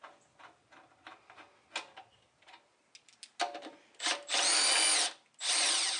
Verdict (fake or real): real